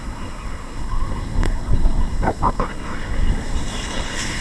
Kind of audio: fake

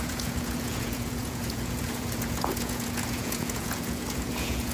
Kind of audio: fake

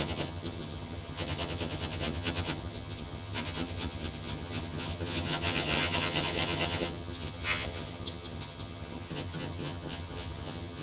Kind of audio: fake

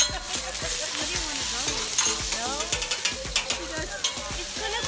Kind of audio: real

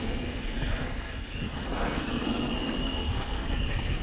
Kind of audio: fake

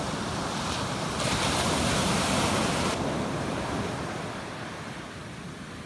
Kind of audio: fake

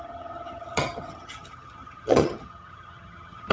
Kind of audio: fake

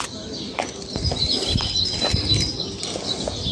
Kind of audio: real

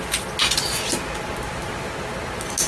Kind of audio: real